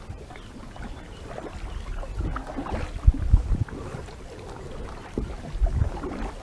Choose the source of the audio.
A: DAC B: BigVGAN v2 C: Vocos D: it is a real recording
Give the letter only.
D